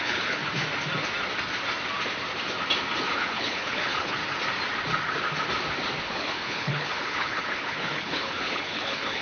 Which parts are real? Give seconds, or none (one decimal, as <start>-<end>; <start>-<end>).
0.4-3.1; 4.2-6.0